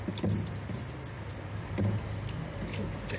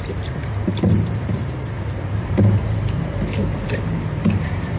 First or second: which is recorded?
first